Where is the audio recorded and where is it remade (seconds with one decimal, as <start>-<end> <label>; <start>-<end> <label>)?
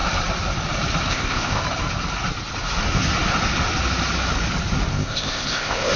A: 0.0-1.1 recorded; 1.1-1.6 remade; 1.6-4.9 recorded; 4.9-6.0 remade